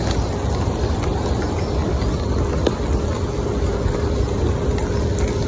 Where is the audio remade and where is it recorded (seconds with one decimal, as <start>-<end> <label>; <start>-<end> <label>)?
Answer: 0.0-5.5 recorded

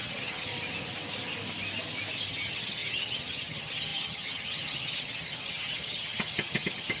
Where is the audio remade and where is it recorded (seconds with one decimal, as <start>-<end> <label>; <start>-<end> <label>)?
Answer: 0.0-0.5 remade; 0.5-2.3 recorded; 2.3-7.0 remade

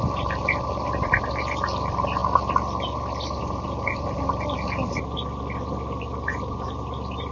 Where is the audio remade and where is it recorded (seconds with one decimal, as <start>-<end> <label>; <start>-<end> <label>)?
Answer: 0.0-7.3 recorded

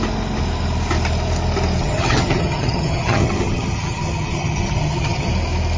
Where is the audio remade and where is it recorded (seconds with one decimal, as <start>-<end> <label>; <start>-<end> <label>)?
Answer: 0.0-1.8 recorded; 1.8-5.3 remade; 5.3-5.8 recorded

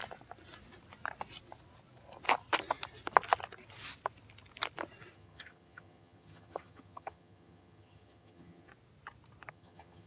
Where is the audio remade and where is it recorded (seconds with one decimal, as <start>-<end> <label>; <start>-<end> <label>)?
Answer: 0.0-5.1 recorded; 5.1-8.7 remade; 8.7-9.5 recorded; 9.5-10.1 remade

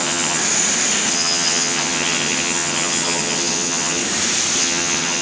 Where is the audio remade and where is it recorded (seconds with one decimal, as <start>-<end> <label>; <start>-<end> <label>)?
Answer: 0.0-0.4 remade; 0.4-1.1 recorded; 1.1-4.0 remade; 4.0-4.6 recorded; 4.6-5.2 remade